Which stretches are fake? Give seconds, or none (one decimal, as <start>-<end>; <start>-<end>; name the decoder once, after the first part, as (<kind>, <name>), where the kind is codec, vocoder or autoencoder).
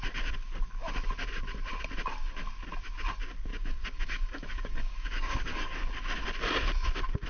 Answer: 3.5-5.9 (codec, DAC)